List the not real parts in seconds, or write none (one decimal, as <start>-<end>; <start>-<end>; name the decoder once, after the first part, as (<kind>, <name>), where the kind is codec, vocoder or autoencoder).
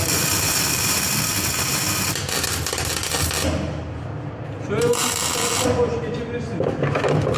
0.0-1.2 (vocoder, BigVGAN v2)